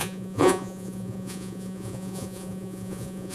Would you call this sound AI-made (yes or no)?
yes